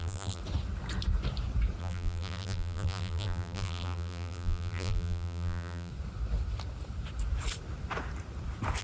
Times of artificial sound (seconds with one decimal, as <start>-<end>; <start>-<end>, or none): 0.0-0.4; 1.8-5.9